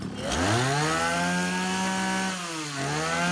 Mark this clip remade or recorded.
recorded